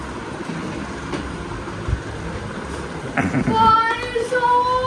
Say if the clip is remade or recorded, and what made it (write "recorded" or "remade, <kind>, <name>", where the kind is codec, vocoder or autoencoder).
recorded